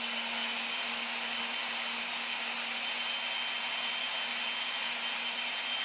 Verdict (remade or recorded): recorded